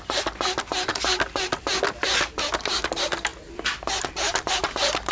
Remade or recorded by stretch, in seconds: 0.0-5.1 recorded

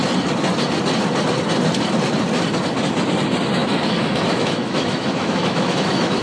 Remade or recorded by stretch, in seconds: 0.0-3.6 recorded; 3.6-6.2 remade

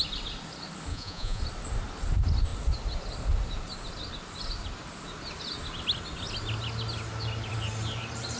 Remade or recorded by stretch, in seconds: 0.0-0.9 recorded; 0.9-1.4 remade; 1.4-8.4 recorded

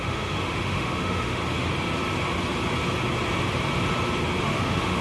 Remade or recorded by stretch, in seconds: 0.0-1.4 remade; 1.4-4.4 recorded; 4.4-5.0 remade

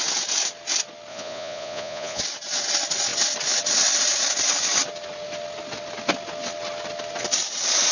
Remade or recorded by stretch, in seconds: 0.0-1.1 recorded; 1.1-2.2 remade; 2.2-7.9 recorded

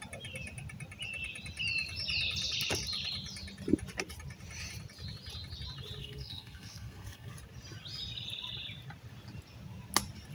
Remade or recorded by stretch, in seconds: 0.0-6.0 recorded; 6.0-7.3 remade; 7.3-10.3 recorded

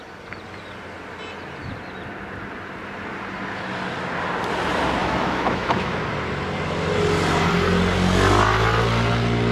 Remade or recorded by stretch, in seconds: 0.0-5.0 recorded; 5.0-6.0 remade; 6.0-9.5 recorded

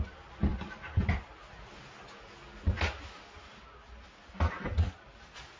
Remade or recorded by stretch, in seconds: 0.0-5.6 recorded